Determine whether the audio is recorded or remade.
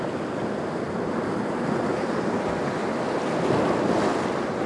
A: recorded